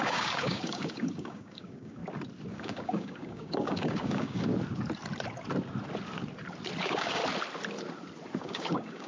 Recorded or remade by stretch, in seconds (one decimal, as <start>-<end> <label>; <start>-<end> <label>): 0.0-2.0 remade; 2.0-2.5 recorded; 2.5-4.5 remade; 4.5-6.8 recorded; 6.8-7.2 remade; 7.2-8.4 recorded; 8.4-9.1 remade